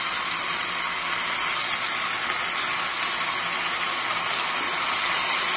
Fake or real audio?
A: real